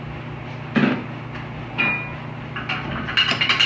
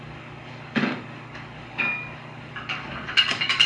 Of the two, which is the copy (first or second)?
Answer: second